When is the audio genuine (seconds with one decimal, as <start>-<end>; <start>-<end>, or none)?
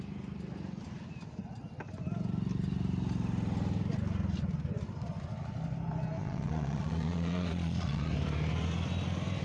0.0-6.2; 8.1-9.4